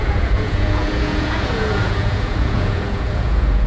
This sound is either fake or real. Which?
fake